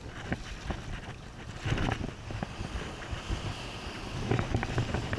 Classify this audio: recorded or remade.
recorded